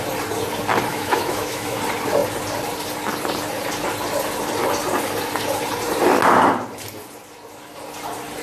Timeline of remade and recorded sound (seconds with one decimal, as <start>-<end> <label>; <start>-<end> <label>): 0.0-0.9 recorded; 0.9-1.8 remade; 1.8-8.4 recorded